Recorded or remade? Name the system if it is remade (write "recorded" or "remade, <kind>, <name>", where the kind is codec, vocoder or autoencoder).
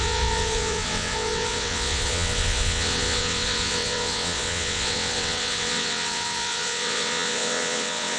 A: remade, vocoder, WaveNeXt